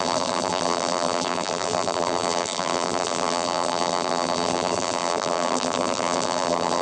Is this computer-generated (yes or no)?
yes